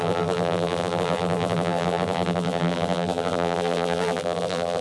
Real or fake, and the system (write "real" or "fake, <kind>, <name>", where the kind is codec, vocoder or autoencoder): fake, vocoder, BigVGAN v2